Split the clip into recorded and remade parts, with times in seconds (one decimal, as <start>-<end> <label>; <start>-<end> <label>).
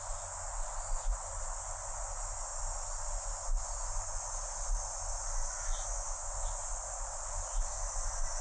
0.0-8.4 recorded